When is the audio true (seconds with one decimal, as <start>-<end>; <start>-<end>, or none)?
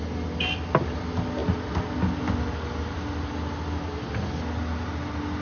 0.0-5.4